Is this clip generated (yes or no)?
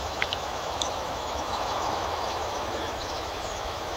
yes